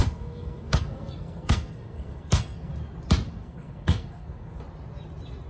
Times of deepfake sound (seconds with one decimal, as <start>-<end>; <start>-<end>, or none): 0.0-2.7; 3.4-4.6